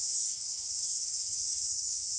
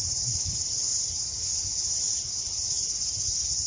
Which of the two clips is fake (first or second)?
first